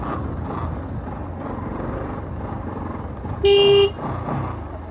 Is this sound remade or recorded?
recorded